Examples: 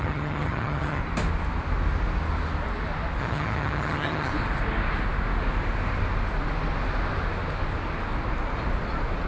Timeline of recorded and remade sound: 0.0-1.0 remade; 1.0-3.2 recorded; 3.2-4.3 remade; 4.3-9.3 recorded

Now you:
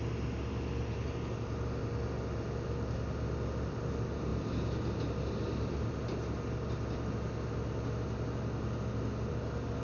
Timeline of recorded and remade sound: 0.0-9.8 recorded

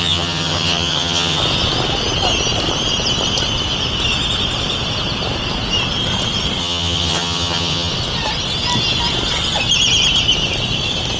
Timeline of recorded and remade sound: 0.0-1.4 remade; 1.4-6.6 recorded; 6.6-7.9 remade; 7.9-11.2 recorded

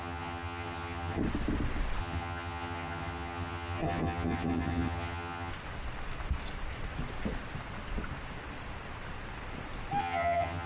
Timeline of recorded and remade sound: 0.0-1.2 remade; 1.2-2.0 recorded; 2.0-5.5 remade; 5.5-10.0 recorded; 10.0-10.7 remade